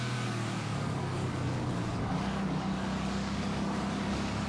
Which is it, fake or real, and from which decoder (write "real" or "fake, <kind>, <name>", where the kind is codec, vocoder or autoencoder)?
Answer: fake, codec, DAC